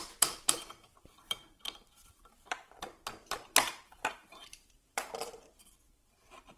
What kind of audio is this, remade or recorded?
remade